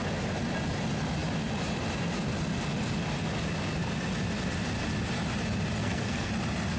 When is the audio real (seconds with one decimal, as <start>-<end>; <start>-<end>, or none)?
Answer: 0.0-5.8; 6.3-6.8

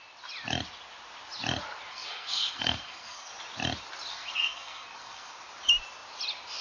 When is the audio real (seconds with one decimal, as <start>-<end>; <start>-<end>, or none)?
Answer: 0.0-1.9; 3.3-4.1; 5.3-6.6

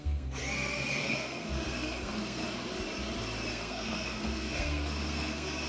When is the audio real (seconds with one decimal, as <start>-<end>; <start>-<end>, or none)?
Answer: 0.4-1.0; 2.4-3.5

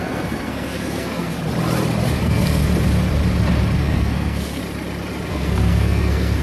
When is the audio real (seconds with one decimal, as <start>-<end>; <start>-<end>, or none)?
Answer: 1.4-2.2; 2.6-3.8; 4.6-5.3

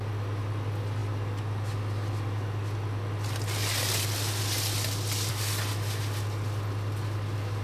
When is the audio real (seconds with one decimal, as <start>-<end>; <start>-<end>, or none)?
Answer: 0.0-7.6

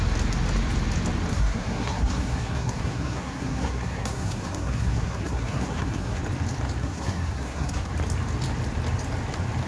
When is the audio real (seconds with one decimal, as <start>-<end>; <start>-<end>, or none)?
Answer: 0.0-1.3; 6.2-6.8; 7.9-9.7

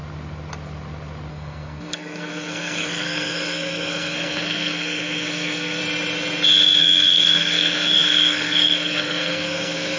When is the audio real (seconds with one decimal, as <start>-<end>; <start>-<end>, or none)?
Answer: 0.0-1.3; 5.8-6.8

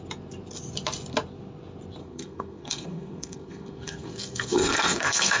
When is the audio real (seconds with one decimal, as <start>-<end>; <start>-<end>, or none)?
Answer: 0.0-2.0